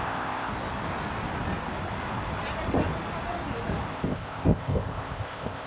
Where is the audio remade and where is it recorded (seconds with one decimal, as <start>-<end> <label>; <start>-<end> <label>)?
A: 0.0-0.5 remade; 0.5-3.9 recorded; 3.9-5.7 remade